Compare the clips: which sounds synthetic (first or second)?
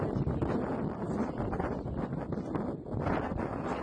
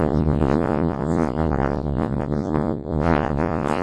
second